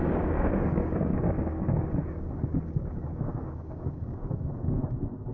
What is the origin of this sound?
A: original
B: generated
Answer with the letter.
B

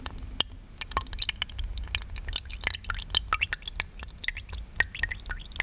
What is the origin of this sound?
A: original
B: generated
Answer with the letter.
A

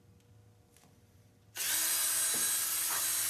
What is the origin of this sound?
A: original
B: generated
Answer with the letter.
A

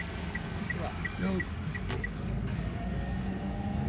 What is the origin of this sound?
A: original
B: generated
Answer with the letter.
B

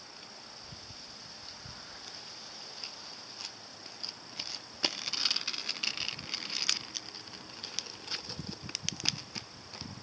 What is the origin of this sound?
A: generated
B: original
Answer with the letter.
B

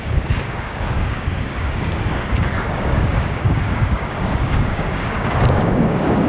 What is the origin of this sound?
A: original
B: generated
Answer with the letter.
B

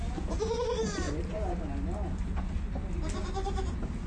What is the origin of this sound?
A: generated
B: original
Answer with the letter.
B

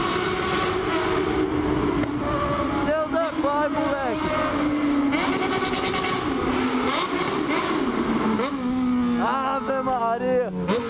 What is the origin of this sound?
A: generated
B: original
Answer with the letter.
B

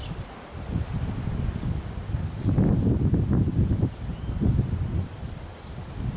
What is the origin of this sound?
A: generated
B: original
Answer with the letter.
B